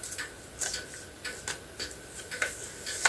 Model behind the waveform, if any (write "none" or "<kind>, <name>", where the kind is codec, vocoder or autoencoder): none